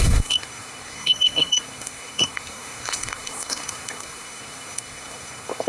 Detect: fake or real fake